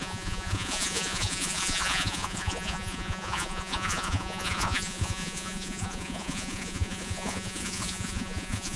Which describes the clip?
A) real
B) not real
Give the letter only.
B